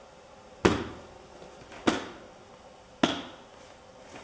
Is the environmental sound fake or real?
real